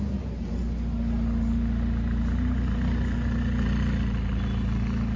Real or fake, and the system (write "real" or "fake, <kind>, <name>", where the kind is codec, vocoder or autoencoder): real